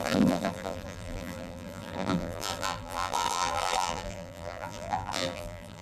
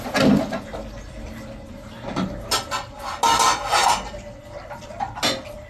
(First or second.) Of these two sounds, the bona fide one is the second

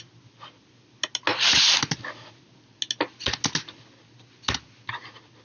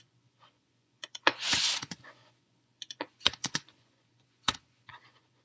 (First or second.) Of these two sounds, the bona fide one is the first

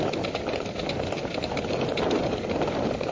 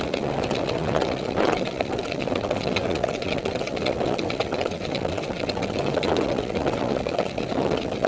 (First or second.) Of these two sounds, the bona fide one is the first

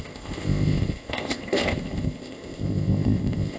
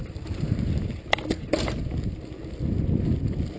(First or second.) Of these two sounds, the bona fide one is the second